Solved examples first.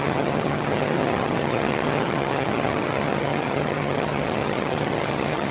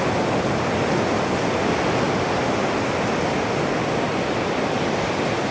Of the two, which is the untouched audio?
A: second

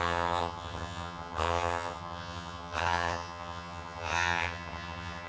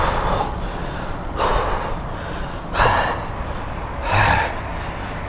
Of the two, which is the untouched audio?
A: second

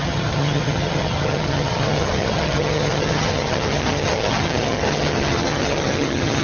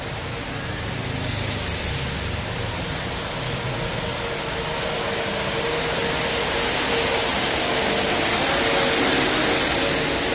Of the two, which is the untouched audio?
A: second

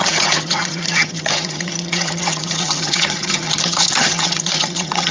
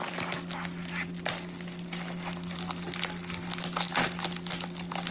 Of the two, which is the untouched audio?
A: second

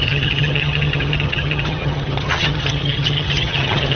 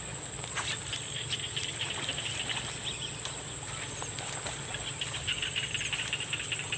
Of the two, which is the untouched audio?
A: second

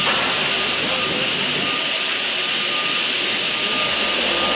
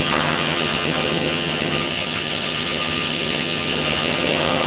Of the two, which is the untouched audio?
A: first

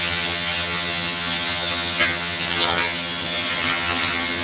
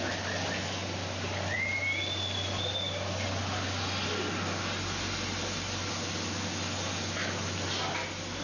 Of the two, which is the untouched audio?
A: second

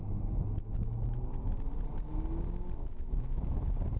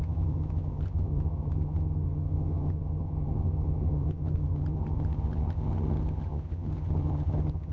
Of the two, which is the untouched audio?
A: first